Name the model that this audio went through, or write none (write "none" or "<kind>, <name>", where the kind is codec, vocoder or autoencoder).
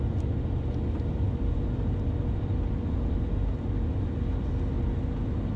none